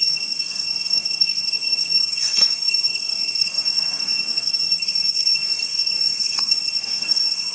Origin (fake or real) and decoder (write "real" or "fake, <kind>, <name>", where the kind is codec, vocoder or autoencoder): fake, codec, SNAC